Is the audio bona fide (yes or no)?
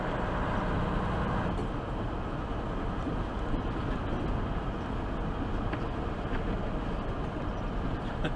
yes